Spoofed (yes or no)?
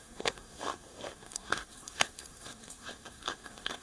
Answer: yes